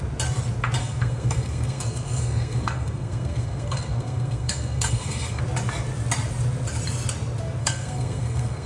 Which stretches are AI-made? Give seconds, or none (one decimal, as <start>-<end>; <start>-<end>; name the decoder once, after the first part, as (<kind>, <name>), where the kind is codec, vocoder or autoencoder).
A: 0.8-5.4 (codec, SNAC); 7.6-8.7